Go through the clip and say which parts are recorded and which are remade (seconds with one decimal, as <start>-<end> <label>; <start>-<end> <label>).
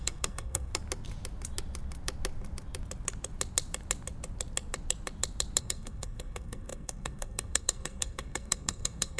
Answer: 0.0-0.7 remade; 0.7-5.6 recorded; 5.6-9.2 remade